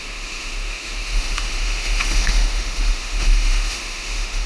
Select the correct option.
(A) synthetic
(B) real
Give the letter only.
A